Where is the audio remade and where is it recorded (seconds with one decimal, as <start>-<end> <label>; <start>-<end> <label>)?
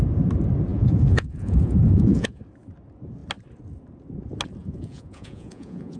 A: 0.0-0.7 recorded; 0.7-2.4 remade; 2.4-4.6 recorded; 4.6-6.0 remade